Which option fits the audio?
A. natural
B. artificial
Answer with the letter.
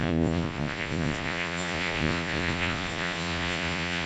B